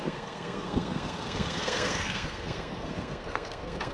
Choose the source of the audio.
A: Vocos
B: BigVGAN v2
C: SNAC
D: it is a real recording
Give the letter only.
C